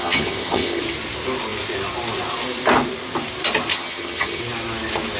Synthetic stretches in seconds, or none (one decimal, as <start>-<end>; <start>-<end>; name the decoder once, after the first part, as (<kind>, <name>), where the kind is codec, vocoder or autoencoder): 0.0-0.8 (vocoder, HiFi-GAN); 3.7-4.4